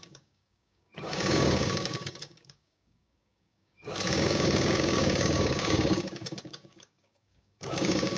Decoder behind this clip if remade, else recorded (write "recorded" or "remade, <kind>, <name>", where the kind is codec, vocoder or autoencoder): remade, codec, DAC